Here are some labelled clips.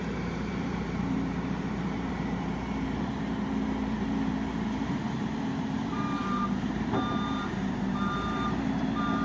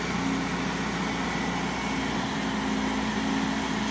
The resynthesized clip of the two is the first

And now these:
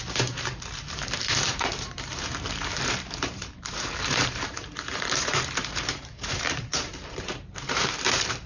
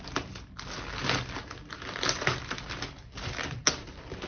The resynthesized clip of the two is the first